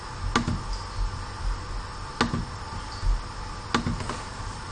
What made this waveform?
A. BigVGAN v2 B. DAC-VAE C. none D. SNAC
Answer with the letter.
C